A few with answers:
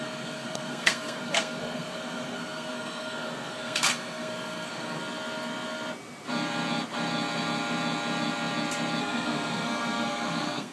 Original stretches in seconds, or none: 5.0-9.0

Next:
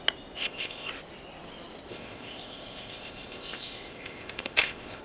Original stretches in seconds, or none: 0.0-0.4; 0.9-1.9

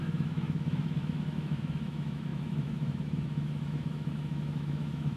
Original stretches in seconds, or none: none

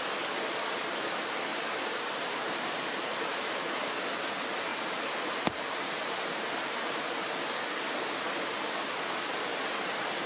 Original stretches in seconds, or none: 0.0-1.5; 3.9-4.7; 7.1-9.5

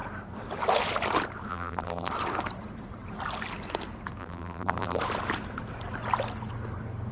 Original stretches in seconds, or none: 0.0-1.5; 2.1-4.2; 5.0-7.1

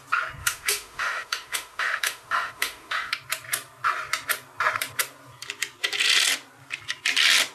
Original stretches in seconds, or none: 0.0-0.4; 3.1-7.5

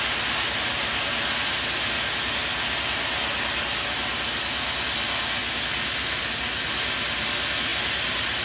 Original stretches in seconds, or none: 0.0-8.4